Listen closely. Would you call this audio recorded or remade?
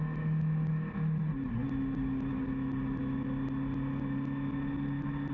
recorded